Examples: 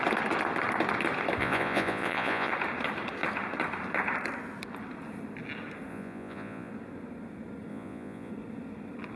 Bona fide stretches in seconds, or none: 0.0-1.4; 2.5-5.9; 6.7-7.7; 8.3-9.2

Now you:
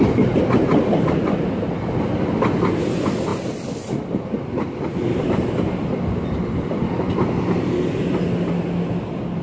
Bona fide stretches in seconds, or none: 0.0-9.4